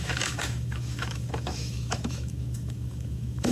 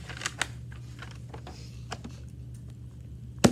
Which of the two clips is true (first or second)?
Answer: second